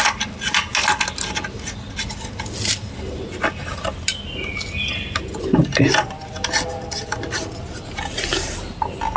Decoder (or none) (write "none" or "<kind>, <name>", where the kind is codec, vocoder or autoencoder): none